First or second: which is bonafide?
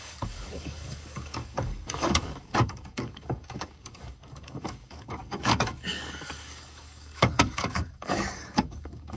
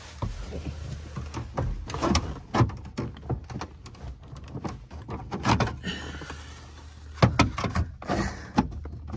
second